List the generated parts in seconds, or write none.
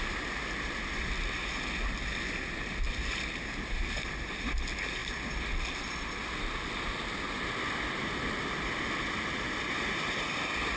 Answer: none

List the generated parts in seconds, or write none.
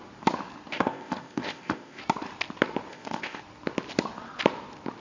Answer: 0.7-2.0; 2.9-3.4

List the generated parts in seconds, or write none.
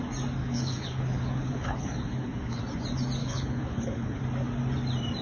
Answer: 0.4-2.6; 3.2-4.2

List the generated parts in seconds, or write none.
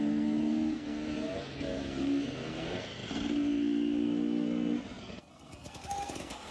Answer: 0.0-6.5